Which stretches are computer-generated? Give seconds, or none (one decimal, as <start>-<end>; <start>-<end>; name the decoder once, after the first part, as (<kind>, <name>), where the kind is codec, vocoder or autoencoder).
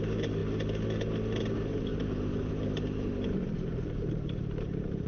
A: 1.9-5.1 (vocoder, BigVGAN v2)